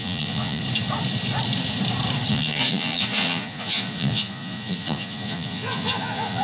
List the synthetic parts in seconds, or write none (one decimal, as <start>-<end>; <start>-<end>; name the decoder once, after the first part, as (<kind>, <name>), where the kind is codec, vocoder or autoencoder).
0.0-0.6 (vocoder, Vocos); 2.3-6.4